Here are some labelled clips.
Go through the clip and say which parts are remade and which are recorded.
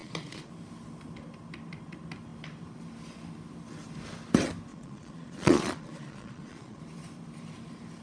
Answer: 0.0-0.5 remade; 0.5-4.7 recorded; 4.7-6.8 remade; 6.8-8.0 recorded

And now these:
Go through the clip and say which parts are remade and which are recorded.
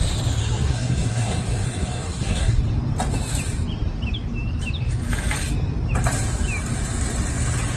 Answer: 0.0-0.4 recorded; 0.4-2.6 remade; 2.6-7.8 recorded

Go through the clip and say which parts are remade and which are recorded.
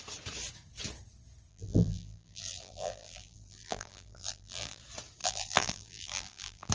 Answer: 0.0-1.5 recorded; 1.5-4.8 remade; 4.8-5.2 recorded; 5.2-6.7 remade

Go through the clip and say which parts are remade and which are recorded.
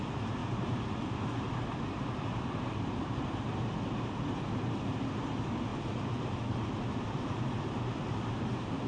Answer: 0.0-3.5 remade; 3.5-4.3 recorded; 4.3-5.7 remade; 5.7-6.2 recorded; 6.2-8.9 remade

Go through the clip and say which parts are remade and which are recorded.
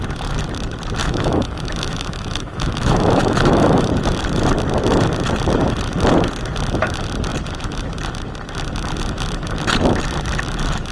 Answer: 0.0-1.0 recorded; 1.0-3.9 remade; 3.9-10.9 recorded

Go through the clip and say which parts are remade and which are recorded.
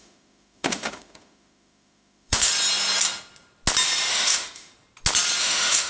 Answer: 0.0-2.5 remade; 2.5-4.1 recorded; 4.1-4.7 remade; 4.7-5.4 recorded; 5.4-5.9 remade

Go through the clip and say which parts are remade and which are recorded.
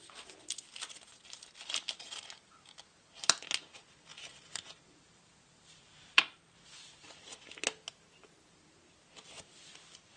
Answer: 0.0-4.1 recorded; 4.1-6.2 remade; 6.2-10.2 recorded